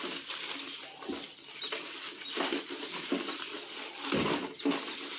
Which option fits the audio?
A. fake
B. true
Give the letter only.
B